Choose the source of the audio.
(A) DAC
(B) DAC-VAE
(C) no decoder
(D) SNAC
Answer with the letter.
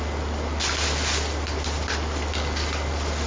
C